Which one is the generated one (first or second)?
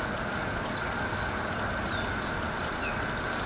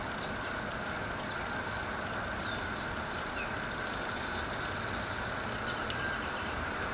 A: second